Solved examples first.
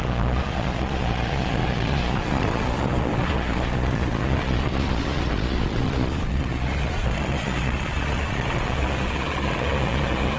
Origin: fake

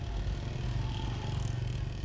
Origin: real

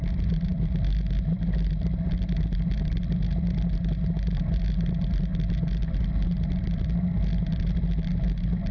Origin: real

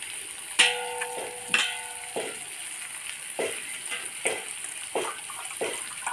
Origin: real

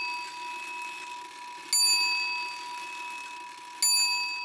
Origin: real